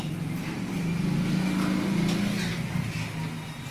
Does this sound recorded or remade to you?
recorded